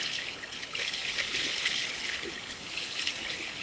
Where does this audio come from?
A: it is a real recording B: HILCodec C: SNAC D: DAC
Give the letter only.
B